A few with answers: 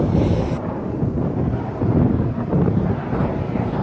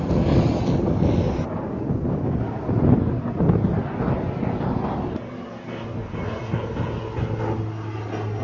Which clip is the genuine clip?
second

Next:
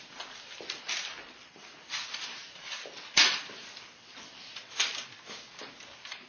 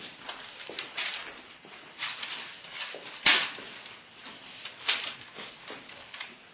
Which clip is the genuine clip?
first